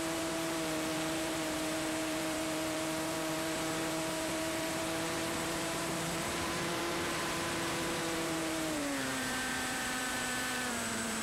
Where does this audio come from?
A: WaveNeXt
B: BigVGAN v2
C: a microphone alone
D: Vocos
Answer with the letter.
B